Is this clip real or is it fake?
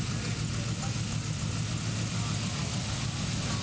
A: real